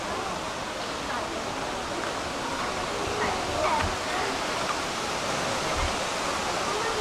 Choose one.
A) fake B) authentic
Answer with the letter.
B